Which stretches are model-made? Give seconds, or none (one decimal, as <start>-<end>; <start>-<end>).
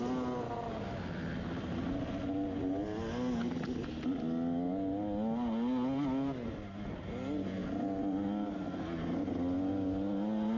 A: none